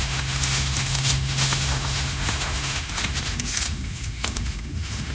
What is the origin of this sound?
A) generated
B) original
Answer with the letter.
A